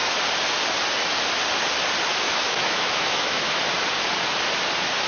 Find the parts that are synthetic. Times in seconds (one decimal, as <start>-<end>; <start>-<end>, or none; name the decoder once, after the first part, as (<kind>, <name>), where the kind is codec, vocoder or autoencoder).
2.1-3.6 (autoencoder, DAC-VAE)